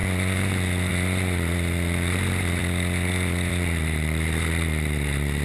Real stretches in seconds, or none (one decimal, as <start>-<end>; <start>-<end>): 2.6-3.5